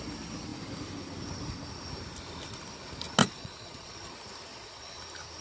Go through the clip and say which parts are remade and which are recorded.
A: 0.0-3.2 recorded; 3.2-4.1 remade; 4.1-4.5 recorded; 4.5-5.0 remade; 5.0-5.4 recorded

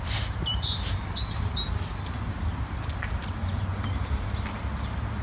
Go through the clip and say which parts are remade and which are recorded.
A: 0.0-0.5 recorded; 0.5-1.4 remade; 1.4-5.2 recorded

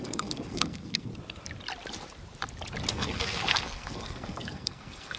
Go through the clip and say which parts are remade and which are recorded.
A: 0.0-1.1 remade; 1.1-2.9 recorded; 2.9-5.2 remade

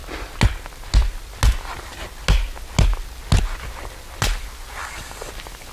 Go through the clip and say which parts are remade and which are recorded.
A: 0.0-4.8 recorded; 4.8-5.3 remade; 5.3-5.7 recorded

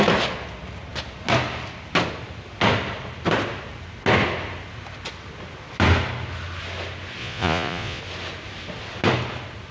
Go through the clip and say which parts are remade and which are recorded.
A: 0.0-7.2 recorded; 7.2-8.0 remade; 8.0-9.7 recorded

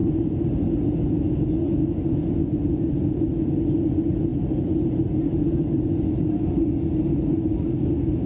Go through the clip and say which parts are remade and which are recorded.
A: 0.0-8.3 recorded

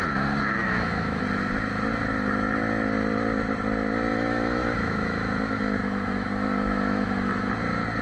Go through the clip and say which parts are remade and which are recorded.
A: 0.0-0.6 recorded; 0.6-1.2 remade; 1.2-4.1 recorded; 4.1-7.5 remade; 7.5-8.0 recorded

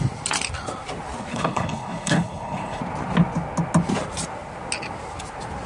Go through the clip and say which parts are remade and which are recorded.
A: 0.0-1.3 recorded; 1.3-2.8 remade; 2.8-5.7 recorded